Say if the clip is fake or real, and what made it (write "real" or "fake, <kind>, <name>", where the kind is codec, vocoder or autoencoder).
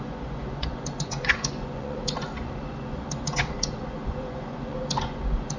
fake, vocoder, Vocos